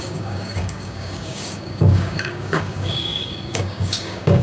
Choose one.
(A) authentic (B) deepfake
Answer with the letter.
B